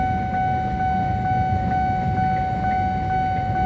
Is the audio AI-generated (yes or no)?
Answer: no